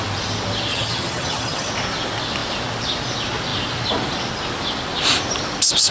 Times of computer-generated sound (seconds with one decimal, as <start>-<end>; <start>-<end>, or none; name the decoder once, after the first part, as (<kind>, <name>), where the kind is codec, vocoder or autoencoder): 0.7-1.7 (vocoder, HiFi-GAN)

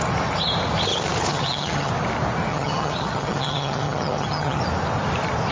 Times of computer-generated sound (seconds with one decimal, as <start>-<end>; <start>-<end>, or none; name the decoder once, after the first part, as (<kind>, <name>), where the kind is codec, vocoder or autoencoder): 1.3-1.9 (vocoder, HiFi-GAN); 2.5-4.6

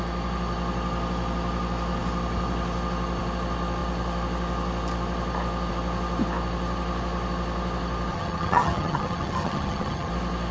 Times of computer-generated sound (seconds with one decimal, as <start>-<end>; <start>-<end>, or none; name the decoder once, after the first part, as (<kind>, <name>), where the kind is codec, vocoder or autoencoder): 8.1-10.1 (vocoder, HiFi-GAN)

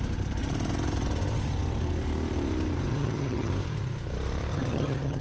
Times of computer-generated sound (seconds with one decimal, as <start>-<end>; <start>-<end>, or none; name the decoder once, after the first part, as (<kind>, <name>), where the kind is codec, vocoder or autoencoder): 2.9-3.5 (vocoder, HiFi-GAN); 4.5-5.2

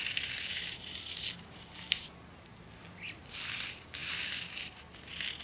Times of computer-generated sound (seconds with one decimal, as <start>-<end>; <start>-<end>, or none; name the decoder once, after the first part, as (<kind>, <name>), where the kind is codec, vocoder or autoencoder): none

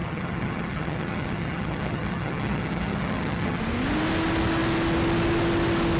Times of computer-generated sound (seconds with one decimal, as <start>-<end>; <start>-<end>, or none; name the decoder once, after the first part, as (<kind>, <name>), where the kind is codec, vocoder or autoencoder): 0.0-3.6 (vocoder, HiFi-GAN)